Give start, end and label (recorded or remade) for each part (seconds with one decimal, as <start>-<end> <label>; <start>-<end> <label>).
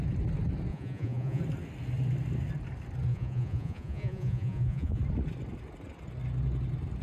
0.0-0.7 recorded; 0.7-1.4 remade; 1.4-3.1 recorded; 3.1-5.0 remade; 5.0-7.0 recorded